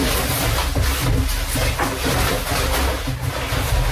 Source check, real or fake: real